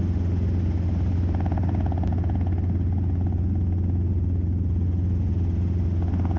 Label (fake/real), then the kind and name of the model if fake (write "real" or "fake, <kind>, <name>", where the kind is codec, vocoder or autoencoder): real